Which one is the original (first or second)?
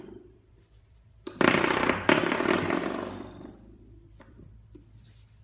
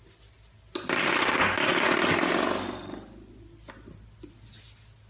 second